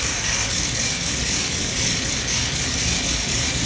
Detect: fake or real fake